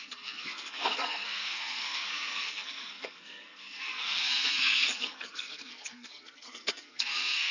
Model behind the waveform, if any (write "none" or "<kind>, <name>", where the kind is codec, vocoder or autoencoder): codec, SNAC